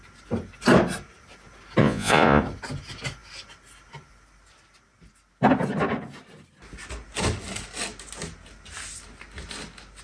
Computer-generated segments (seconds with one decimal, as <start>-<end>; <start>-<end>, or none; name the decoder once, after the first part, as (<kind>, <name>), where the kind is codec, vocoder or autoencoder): 1.8-2.4 (vocoder, Vocos)